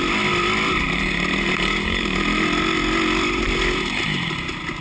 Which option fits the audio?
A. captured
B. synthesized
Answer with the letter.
A